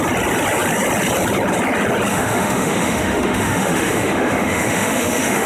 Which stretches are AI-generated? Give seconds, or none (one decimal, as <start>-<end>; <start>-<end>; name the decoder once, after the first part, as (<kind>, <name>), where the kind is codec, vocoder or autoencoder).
2.1-5.5 (autoencoder, DAC-VAE)

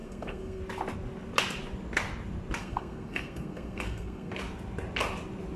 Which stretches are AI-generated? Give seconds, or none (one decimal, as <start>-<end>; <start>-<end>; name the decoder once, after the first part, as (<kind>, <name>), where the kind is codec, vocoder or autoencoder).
0.0-0.6 (codec, SNAC); 2.6-4.3